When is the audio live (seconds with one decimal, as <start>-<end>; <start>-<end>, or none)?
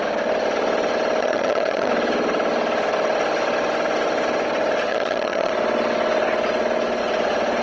0.0-1.2; 1.9-4.9; 5.5-7.6